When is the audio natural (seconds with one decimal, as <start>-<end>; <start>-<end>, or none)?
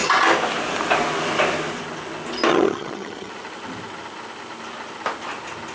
0.0-2.5; 3.3-5.7